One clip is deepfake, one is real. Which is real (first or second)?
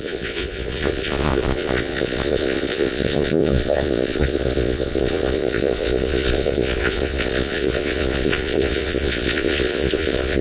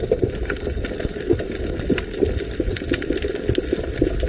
second